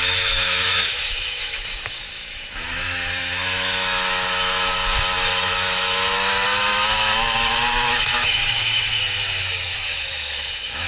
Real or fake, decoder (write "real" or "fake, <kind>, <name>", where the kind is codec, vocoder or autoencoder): fake, autoencoder, DAC-VAE